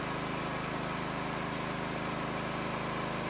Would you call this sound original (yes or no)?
yes